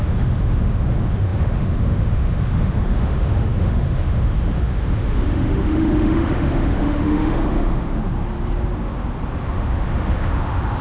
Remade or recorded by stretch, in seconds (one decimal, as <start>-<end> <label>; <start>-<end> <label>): 0.0-8.1 remade; 8.1-9.5 recorded; 9.5-10.8 remade

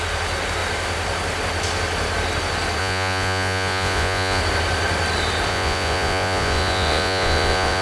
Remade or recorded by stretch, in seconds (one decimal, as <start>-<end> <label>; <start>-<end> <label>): 0.0-2.8 recorded; 2.8-4.4 remade; 4.4-5.5 recorded; 5.5-7.8 remade

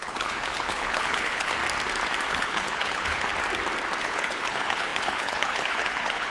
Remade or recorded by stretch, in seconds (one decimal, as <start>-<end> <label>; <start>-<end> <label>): 0.0-1.6 remade; 1.6-2.3 recorded; 2.3-3.3 remade; 3.3-4.0 recorded; 4.0-6.3 remade

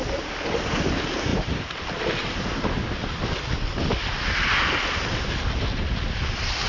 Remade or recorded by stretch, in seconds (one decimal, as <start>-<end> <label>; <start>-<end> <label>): 0.0-6.7 recorded